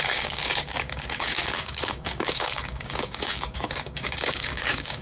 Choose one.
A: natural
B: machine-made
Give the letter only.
B